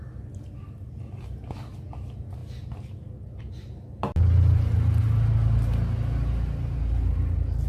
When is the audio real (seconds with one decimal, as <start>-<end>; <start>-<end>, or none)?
0.0-7.7